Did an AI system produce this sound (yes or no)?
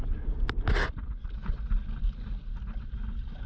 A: no